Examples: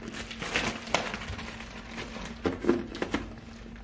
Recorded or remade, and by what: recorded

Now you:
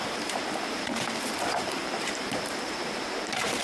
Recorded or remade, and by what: remade, vocoder, BigVGAN v2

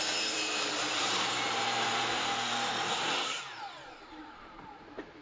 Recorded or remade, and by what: remade, vocoder, BigVGAN v2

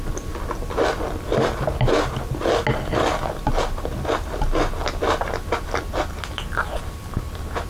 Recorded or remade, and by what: recorded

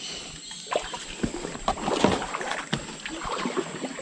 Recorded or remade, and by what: recorded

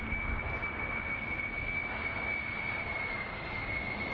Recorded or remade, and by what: recorded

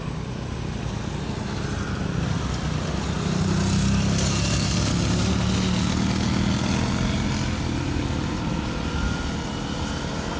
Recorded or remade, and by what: recorded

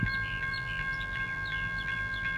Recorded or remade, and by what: remade, vocoder, BigVGAN v2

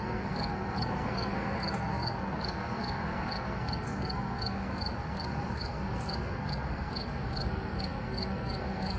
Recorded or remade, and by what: remade, codec, SNAC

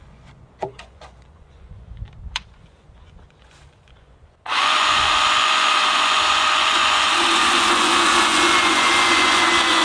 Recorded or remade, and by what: remade, vocoder, Vocos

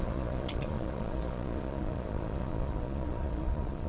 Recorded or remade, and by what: remade, vocoder, Vocos